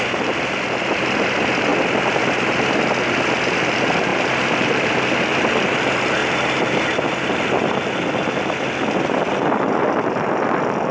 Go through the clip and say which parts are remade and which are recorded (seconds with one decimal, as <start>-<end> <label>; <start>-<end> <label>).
0.0-10.9 recorded